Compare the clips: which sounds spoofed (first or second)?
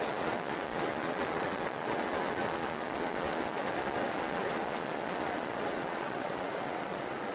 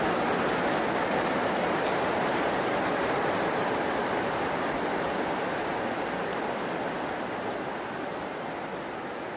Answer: first